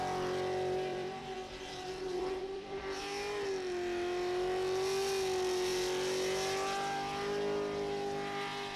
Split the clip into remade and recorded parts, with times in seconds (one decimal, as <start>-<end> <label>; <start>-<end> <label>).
0.0-0.9 recorded; 0.9-3.0 remade; 3.0-8.8 recorded